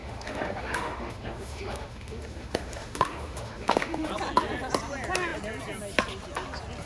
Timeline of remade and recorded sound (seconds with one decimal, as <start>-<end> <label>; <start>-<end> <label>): 0.0-4.1 remade; 4.1-6.9 recorded